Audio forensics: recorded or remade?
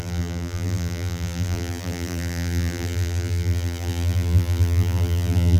remade